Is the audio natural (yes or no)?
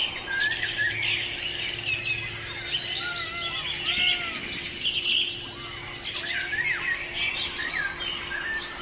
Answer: yes